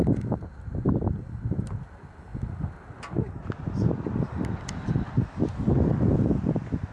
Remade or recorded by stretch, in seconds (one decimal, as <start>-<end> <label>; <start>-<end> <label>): 0.0-6.9 recorded